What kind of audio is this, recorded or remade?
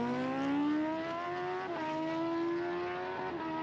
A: recorded